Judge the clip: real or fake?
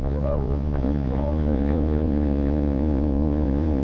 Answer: fake